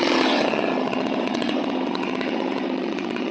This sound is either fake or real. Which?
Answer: fake